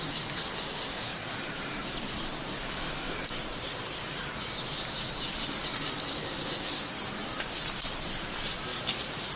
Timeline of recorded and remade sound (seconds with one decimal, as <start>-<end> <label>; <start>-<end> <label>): 0.0-1.1 recorded; 1.1-4.4 remade; 4.4-9.4 recorded